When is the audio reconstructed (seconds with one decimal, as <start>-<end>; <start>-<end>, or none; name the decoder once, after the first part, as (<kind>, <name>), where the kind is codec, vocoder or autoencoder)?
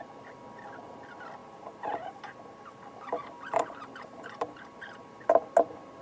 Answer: 1.4-2.2 (vocoder, BigVGAN v2); 3.2-4.8